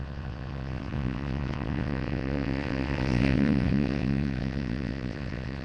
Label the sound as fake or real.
fake